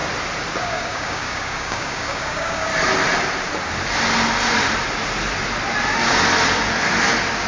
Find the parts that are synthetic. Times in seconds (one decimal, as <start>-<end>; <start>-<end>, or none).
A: 0.6-2.7